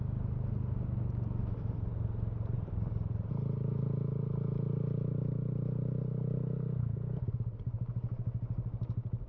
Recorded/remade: recorded